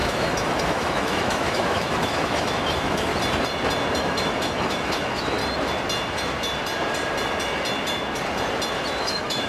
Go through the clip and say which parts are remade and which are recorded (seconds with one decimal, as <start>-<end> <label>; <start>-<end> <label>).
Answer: 0.0-3.1 remade; 3.1-4.0 recorded; 4.0-5.4 remade; 5.4-9.0 recorded; 9.0-9.5 remade